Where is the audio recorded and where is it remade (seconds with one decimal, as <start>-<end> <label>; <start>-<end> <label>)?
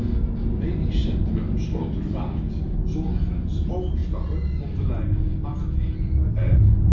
0.0-6.9 recorded